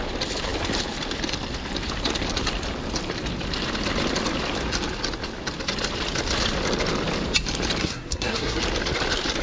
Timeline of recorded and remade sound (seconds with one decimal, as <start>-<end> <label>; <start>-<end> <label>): 0.0-7.8 recorded; 7.8-8.6 remade; 8.6-9.4 recorded